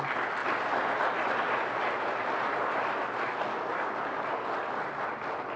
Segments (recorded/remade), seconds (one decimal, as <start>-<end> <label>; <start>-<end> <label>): 0.0-5.6 recorded